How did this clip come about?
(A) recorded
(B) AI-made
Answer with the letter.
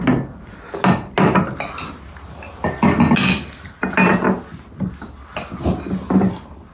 A